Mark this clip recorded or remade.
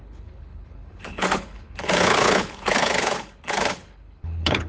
remade